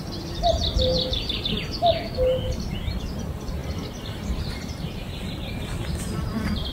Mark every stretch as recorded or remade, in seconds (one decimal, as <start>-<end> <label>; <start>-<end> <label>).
0.0-6.7 recorded